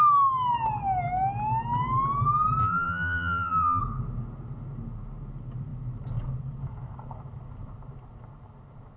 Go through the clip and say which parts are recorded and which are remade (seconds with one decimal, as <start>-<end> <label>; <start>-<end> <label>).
0.0-2.6 recorded; 2.6-3.8 remade; 3.8-9.0 recorded